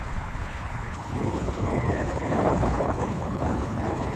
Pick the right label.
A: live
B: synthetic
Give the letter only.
B